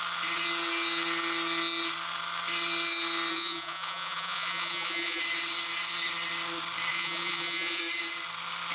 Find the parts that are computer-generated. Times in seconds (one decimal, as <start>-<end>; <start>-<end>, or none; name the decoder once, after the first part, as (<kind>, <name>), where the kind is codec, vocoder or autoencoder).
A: 3.3-5.2 (vocoder, Vocos); 6.9-7.8